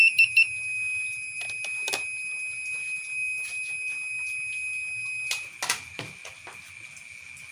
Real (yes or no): yes